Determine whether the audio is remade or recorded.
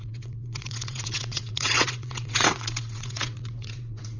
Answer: remade